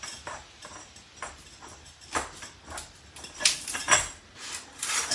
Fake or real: real